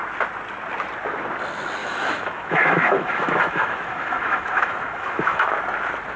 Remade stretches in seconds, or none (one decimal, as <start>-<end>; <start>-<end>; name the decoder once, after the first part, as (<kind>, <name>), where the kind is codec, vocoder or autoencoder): 1.8-5.5 (autoencoder, DAC-VAE)